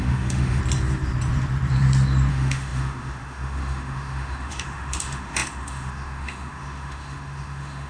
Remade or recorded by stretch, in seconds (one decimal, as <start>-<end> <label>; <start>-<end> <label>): 0.0-0.6 remade; 0.6-2.3 recorded; 2.3-7.9 remade